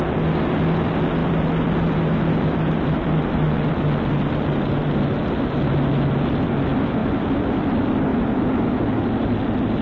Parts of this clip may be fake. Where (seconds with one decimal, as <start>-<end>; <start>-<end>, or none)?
1.2-3.7; 7.0-7.7